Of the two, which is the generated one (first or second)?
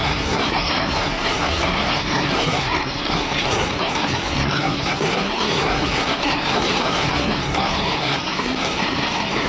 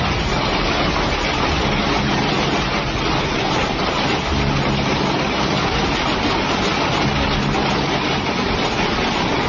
first